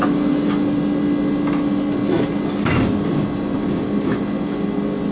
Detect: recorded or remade recorded